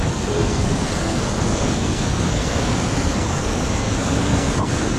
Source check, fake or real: fake